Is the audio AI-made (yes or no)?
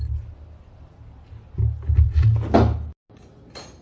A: no